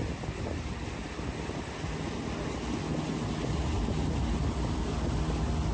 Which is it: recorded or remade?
recorded